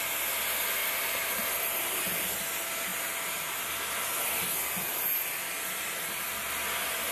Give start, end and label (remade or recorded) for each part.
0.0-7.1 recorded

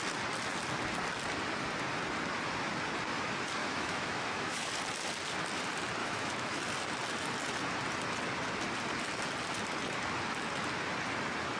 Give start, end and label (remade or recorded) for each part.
0.0-3.6 recorded; 3.6-4.7 remade; 4.7-6.0 recorded; 6.0-6.6 remade; 6.6-11.6 recorded

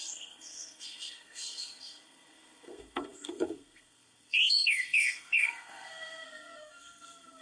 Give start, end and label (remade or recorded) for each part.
0.0-7.4 remade

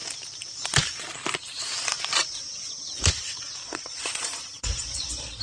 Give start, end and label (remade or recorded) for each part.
0.0-3.6 recorded; 3.6-5.4 remade

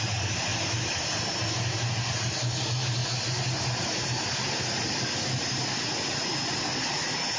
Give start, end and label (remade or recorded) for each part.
0.0-7.4 recorded

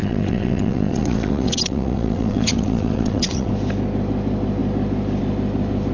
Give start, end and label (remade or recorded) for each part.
0.0-3.5 remade; 3.5-5.9 recorded

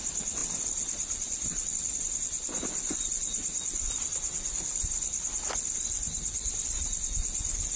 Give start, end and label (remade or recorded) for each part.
0.0-7.8 recorded